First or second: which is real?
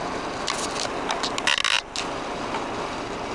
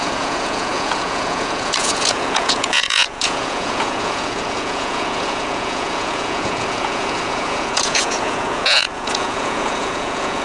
first